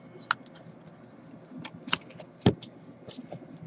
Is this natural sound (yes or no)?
yes